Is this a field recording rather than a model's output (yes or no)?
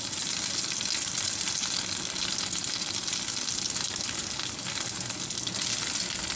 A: yes